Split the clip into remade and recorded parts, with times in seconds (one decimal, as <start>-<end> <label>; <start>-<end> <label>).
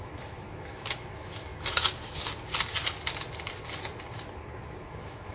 0.0-1.5 remade; 1.5-4.7 recorded; 4.7-5.3 remade